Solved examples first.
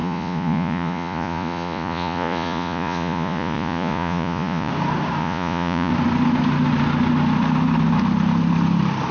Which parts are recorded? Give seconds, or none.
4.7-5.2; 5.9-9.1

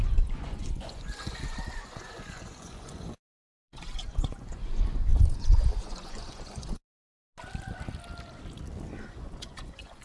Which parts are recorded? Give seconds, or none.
6.8-9.1

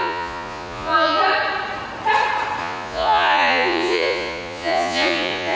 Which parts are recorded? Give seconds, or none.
1.2-2.6

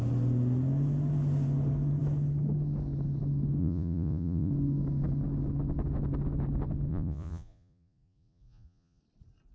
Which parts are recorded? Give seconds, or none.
0.0-3.6; 4.5-6.9; 9.0-9.5